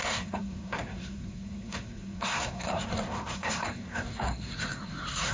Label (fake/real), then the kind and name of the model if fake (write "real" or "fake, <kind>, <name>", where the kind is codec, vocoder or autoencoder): fake, codec, SNAC